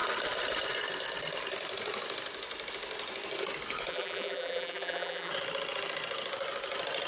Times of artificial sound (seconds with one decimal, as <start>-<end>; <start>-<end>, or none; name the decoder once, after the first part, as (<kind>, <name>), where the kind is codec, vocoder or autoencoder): 3.9-5.3 (vocoder, BigVGAN v2)